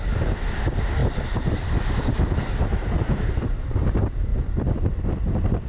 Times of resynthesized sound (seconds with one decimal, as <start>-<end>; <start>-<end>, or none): 1.0-2.1; 4.3-5.0